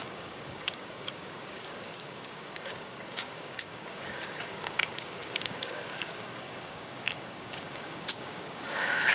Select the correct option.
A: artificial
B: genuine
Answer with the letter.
A